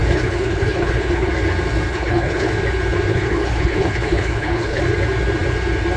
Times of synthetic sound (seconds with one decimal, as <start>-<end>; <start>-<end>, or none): 0.0-1.3; 1.9-2.5; 3.1-4.8